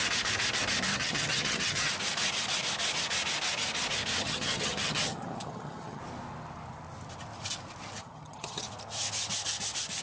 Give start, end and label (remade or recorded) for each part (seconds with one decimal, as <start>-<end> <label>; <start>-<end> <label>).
0.0-0.9 recorded; 0.9-1.9 remade; 1.9-4.2 recorded; 4.2-6.0 remade; 6.0-8.0 recorded; 8.0-8.6 remade; 8.6-10.0 recorded